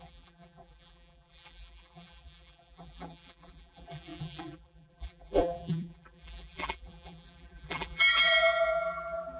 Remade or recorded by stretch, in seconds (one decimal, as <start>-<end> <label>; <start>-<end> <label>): 0.0-9.4 remade